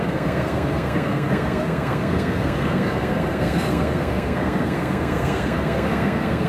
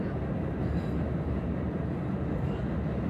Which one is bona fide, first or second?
second